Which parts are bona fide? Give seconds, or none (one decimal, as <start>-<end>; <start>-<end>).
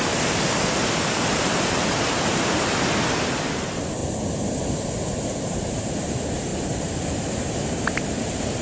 4.0-4.6; 6.5-7.2